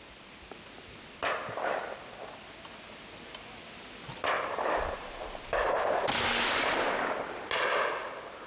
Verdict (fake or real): real